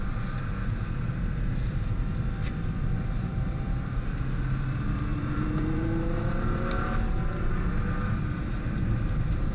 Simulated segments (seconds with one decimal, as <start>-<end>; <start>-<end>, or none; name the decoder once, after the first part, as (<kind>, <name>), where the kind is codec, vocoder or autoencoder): 5.1-7.2 (vocoder, BigVGAN v2)